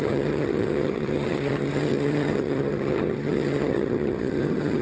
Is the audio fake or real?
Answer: fake